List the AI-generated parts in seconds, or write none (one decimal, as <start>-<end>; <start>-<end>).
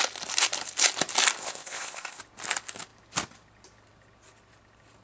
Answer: 1.4-2.2